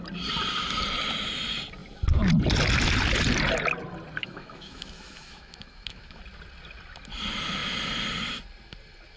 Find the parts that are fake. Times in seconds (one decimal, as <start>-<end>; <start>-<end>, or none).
4.2-6.2